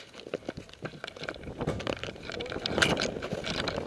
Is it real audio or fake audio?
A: real